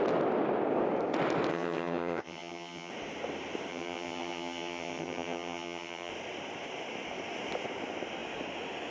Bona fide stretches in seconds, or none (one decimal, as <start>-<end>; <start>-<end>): 0.0-1.5; 2.9-3.7; 6.1-8.9